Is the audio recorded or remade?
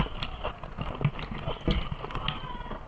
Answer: recorded